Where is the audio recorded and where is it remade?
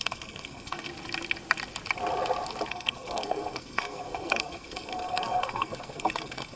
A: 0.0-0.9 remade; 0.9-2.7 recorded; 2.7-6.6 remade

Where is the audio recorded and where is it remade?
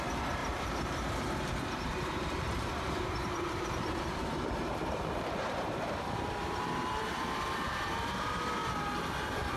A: 0.0-8.6 remade; 8.6-9.6 recorded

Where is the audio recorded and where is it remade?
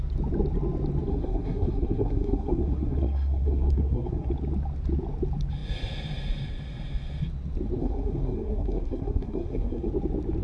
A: 0.0-1.1 recorded; 1.1-4.3 remade; 4.3-7.8 recorded; 7.8-9.9 remade; 9.9-10.4 recorded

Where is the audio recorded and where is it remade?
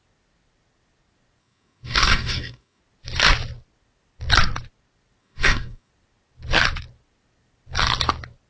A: 0.0-1.4 recorded; 1.4-2.8 remade; 2.8-5.2 recorded; 5.2-5.9 remade; 5.9-8.5 recorded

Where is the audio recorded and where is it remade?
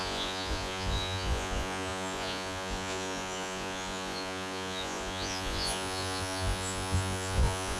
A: 0.0-7.8 remade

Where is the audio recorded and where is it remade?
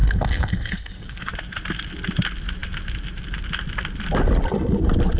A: 0.0-1.3 remade; 1.3-5.2 recorded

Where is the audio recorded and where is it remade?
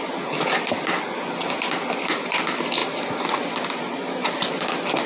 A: 0.0-5.1 recorded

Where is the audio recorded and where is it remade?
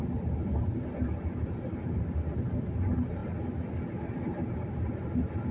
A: 0.0-5.5 recorded